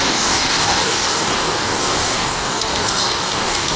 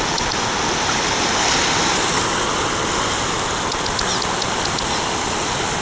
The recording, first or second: second